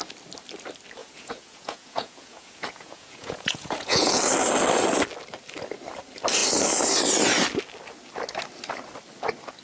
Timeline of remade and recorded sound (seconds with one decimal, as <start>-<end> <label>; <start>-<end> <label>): 0.0-1.0 recorded; 1.0-4.2 remade; 4.2-9.6 recorded